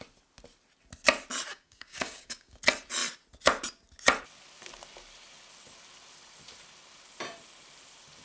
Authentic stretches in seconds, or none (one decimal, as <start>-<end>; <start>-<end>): 0.0-1.5; 2.6-8.2